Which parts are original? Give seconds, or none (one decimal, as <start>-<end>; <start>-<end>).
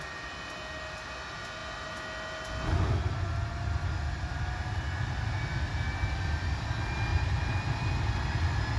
0.0-7.1; 7.9-8.8